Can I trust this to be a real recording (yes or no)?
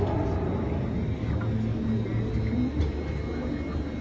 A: yes